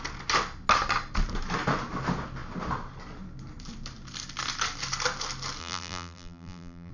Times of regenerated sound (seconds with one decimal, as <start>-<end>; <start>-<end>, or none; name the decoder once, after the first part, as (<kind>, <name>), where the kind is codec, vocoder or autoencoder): 5.6-6.9 (vocoder, BigVGAN v2)